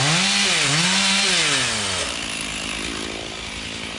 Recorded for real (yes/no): yes